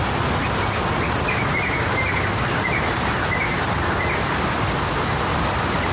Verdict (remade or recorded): recorded